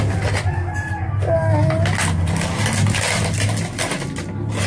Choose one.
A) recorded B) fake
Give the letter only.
A